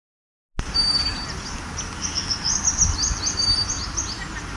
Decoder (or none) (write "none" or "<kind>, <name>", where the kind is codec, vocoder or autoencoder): none